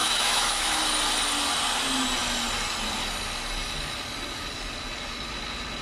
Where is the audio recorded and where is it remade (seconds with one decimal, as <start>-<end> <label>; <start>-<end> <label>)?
0.0-0.8 remade; 0.8-5.8 recorded